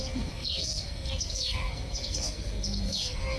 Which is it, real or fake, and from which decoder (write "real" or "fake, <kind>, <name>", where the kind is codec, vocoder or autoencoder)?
fake, codec, SNAC